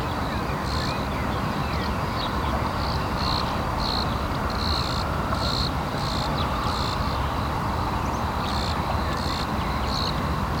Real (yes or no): yes